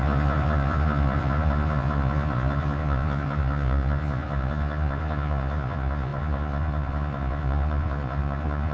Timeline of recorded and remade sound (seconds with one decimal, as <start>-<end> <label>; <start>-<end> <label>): 0.0-8.7 remade

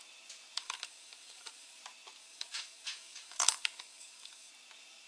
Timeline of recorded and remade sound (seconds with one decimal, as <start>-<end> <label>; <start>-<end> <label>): 0.0-0.6 recorded; 0.6-1.8 remade; 1.8-2.2 recorded; 2.2-4.5 remade; 4.5-5.1 recorded

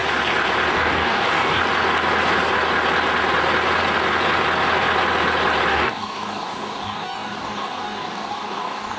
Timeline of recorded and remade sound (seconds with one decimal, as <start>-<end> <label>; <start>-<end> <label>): 0.0-0.7 recorded; 0.7-1.6 remade; 1.6-5.7 recorded; 5.7-9.0 remade

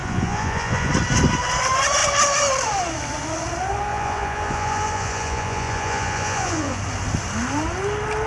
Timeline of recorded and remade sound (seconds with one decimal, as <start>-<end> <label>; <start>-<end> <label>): 0.0-0.9 remade; 0.9-3.9 recorded; 3.9-6.8 remade; 6.8-8.3 recorded

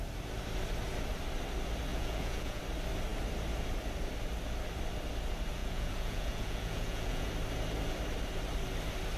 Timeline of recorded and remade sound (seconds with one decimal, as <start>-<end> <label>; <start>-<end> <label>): 0.0-1.9 recorded; 1.9-2.6 remade; 2.6-5.6 recorded; 5.6-7.3 remade; 7.3-9.2 recorded

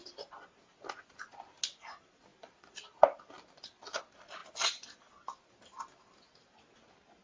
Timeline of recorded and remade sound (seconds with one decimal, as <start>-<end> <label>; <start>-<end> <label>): 0.0-2.3 recorded; 2.3-4.0 remade; 4.0-4.4 recorded; 4.4-5.0 remade; 5.0-7.2 recorded